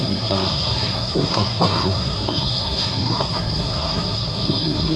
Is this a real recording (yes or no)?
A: no